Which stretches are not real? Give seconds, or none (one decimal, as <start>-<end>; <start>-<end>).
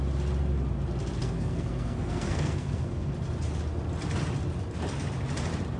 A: 1.2-3.1